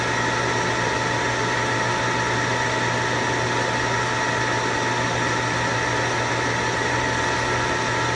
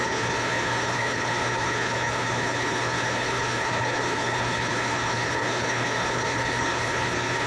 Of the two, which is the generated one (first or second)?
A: second